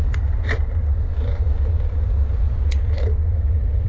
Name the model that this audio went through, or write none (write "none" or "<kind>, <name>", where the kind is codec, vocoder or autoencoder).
none